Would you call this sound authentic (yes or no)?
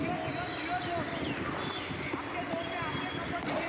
yes